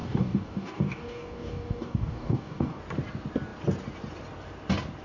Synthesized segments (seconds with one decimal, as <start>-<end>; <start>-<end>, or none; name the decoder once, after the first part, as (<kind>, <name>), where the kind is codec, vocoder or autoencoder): 0.0-2.8 (codec, DAC)